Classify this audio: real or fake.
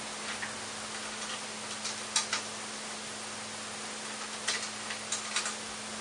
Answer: real